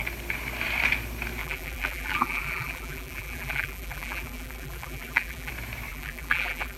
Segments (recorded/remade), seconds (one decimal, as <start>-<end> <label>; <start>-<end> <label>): 0.0-1.4 recorded; 1.4-5.5 remade; 5.5-5.9 recorded; 5.9-6.8 remade